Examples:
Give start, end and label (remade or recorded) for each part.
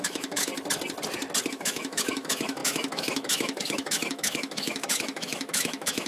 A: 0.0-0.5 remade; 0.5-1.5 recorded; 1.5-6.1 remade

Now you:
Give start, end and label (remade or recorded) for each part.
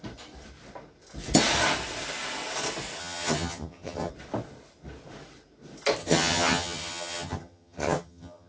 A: 0.0-3.0 recorded; 3.0-4.1 remade; 4.1-6.0 recorded; 6.0-8.5 remade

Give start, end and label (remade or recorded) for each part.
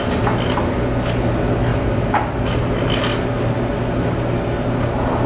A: 0.0-5.3 recorded